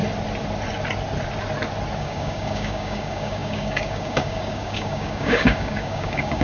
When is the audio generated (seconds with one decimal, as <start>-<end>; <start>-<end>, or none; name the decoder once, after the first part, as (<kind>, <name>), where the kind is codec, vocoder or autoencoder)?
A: 2.0-6.4 (codec, DAC)